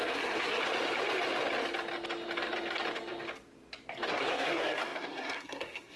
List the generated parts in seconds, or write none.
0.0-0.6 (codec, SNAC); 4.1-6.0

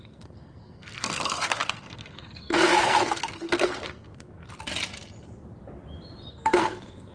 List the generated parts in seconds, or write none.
0.0-4.4 (codec, SNAC); 6.3-7.1

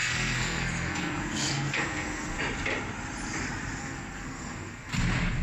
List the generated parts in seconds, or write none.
0.0-2.4 (codec, SNAC); 3.8-4.9

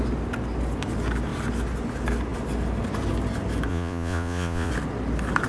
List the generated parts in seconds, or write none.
3.7-4.7 (vocoder, Vocos)